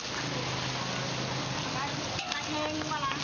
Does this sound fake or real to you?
real